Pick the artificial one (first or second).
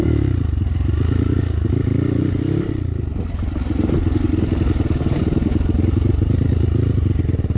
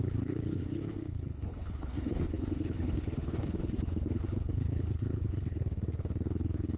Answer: second